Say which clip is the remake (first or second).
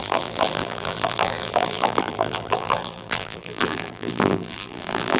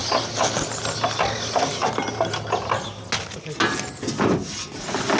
first